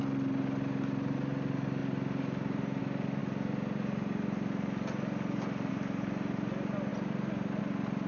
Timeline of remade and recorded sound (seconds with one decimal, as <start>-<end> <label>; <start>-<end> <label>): 0.0-8.1 recorded